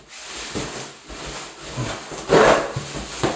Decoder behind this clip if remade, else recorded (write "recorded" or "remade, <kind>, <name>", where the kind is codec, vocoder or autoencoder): recorded